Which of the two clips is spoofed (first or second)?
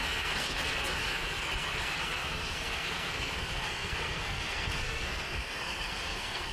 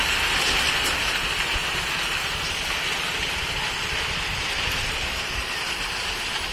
first